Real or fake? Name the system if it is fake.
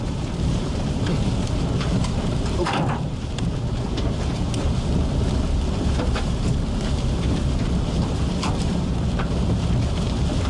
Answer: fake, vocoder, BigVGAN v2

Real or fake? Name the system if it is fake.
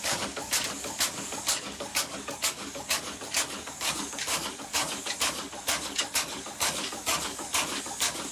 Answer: fake, codec, DAC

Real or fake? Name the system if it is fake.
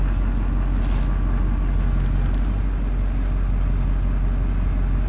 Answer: real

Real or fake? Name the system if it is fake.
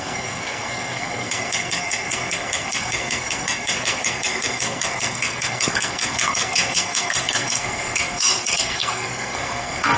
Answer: fake, codec, SNAC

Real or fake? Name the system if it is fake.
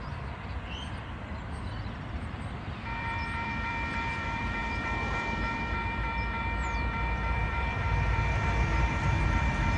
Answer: fake, vocoder, BigVGAN v2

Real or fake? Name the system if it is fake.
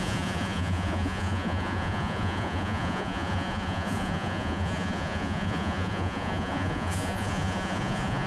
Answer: fake, vocoder, Vocos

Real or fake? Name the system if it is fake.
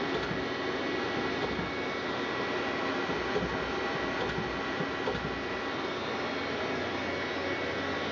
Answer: real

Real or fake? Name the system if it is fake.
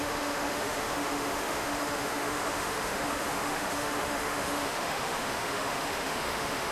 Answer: fake, autoencoder, DAC-VAE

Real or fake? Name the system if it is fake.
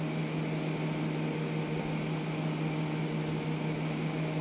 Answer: real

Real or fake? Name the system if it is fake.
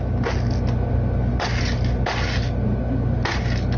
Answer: real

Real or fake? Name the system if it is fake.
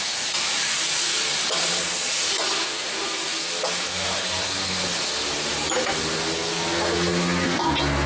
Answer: real